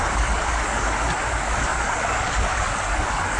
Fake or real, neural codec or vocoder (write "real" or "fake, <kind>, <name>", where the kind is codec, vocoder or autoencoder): fake, codec, DAC